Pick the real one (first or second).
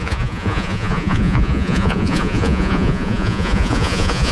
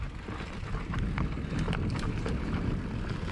second